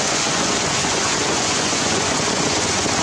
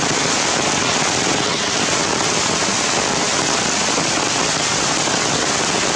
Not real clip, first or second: first